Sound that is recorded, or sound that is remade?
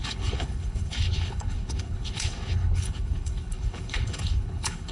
remade